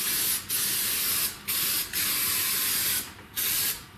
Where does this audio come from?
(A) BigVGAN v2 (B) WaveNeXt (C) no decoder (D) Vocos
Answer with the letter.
C